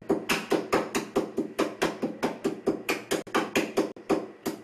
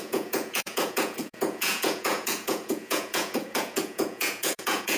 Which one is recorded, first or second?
first